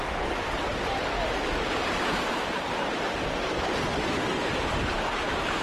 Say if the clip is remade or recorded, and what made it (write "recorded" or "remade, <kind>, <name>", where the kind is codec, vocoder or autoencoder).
recorded